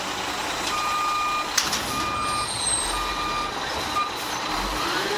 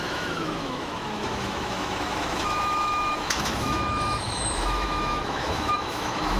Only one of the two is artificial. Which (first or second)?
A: second